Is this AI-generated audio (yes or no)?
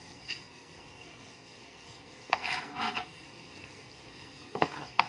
yes